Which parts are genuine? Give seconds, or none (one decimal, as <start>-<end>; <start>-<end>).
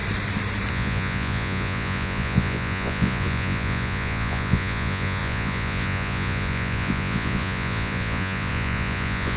0.0-0.7